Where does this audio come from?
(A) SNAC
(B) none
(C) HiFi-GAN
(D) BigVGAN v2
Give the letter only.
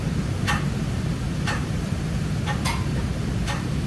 D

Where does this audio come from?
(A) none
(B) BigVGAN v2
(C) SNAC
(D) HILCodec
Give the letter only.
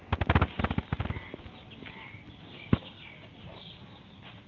A